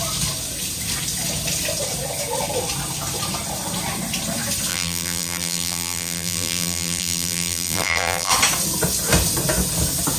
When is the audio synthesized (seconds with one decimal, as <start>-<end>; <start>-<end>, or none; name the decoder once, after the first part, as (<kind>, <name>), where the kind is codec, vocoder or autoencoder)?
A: 4.7-8.3 (vocoder, BigVGAN v2)